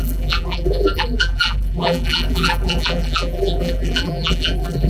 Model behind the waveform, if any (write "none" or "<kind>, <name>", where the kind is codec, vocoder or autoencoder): vocoder, BigVGAN v2